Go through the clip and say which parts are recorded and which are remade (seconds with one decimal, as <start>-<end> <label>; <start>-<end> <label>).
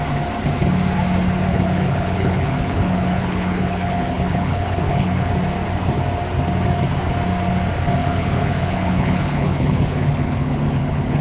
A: 0.0-1.5 recorded; 1.5-5.3 remade; 5.3-8.0 recorded; 8.0-11.2 remade